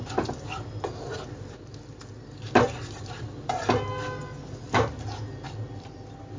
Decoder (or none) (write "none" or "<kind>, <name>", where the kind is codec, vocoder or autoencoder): none